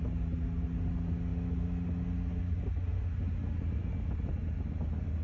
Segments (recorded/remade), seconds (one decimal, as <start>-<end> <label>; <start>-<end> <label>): 0.0-5.2 recorded